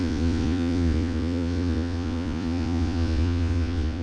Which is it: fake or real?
fake